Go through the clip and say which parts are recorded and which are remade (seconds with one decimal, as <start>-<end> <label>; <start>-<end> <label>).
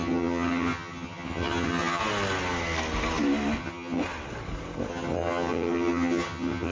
0.0-2.0 remade; 2.0-3.6 recorded; 3.6-4.0 remade; 4.0-4.9 recorded; 4.9-6.7 remade